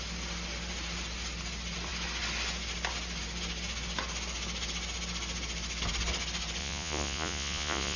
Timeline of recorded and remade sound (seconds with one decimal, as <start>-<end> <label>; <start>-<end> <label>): 0.0-6.6 recorded; 6.6-8.0 remade